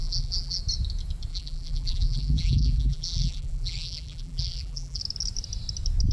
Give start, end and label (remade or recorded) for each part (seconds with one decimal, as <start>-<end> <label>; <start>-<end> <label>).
0.0-0.6 remade; 0.6-1.3 recorded; 1.3-5.0 remade; 5.0-6.1 recorded